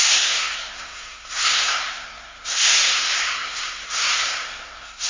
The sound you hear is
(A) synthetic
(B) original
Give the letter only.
A